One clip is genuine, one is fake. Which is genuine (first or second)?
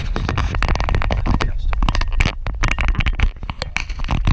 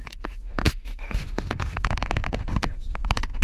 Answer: first